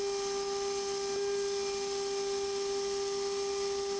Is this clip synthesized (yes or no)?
no